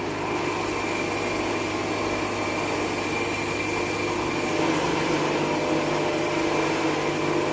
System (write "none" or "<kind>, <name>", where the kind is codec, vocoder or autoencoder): none